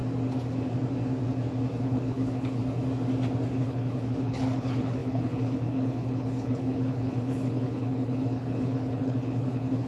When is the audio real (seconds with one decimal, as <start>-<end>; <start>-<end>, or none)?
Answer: 0.0-1.8; 2.6-3.5